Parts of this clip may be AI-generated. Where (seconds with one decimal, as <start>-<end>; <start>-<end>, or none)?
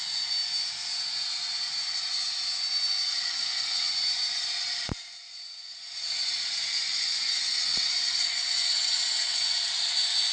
3.1-3.9; 7.1-9.4